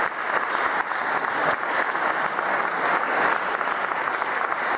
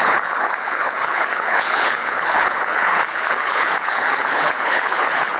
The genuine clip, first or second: first